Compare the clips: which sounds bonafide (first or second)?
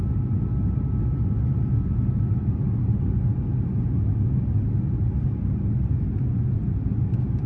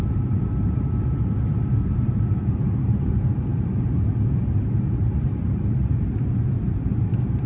first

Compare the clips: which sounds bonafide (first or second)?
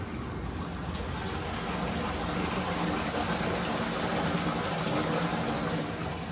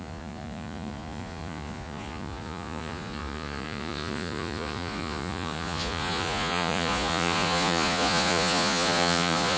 first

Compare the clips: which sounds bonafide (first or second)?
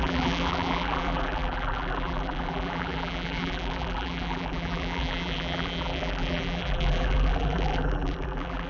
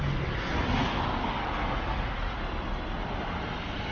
second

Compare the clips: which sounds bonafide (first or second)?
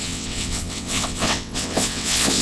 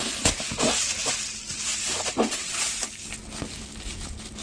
second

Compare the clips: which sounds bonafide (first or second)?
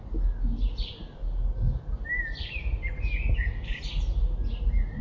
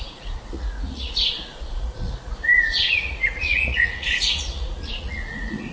first